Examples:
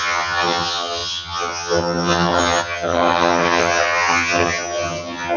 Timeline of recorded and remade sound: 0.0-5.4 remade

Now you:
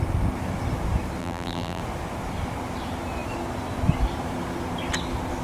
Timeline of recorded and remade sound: 0.0-1.2 recorded; 1.2-1.8 remade; 1.8-5.4 recorded